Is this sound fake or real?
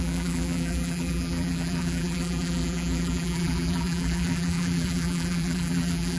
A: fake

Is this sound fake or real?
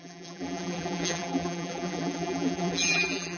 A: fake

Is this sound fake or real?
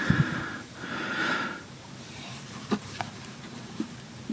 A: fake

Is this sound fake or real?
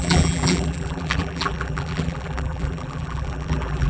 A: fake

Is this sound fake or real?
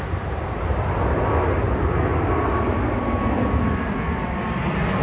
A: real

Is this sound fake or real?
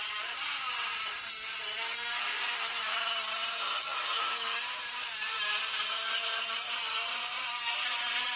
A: fake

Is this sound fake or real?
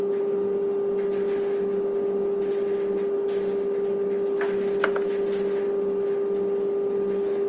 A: real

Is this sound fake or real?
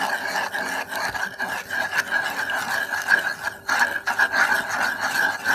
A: real